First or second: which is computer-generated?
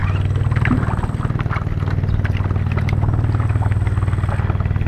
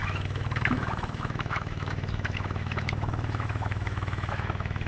second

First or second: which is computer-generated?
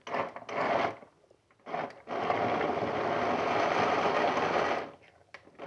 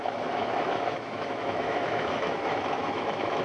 second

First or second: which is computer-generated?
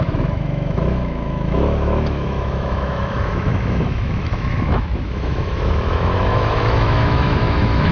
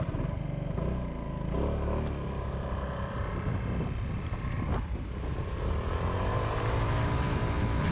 first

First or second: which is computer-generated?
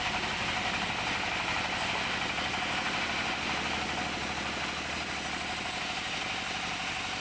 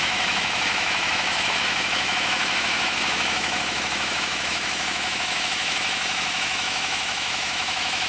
second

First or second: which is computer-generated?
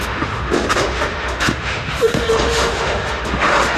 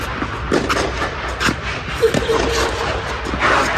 first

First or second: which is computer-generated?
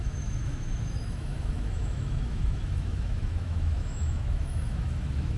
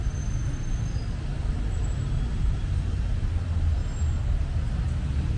first